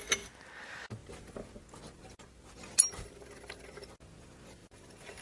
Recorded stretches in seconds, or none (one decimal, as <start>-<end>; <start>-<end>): 0.0-5.2

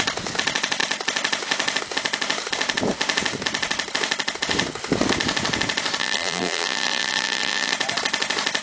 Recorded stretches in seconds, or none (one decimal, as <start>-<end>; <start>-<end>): 0.0-6.0; 7.7-8.6